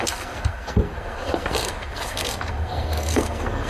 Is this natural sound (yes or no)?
no